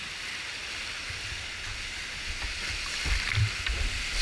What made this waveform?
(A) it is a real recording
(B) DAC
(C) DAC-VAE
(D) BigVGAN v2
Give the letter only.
A